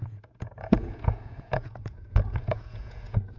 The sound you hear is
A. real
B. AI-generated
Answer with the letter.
B